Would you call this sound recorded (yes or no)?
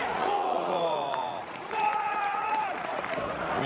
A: no